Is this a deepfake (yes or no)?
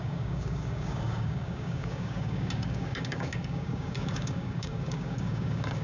yes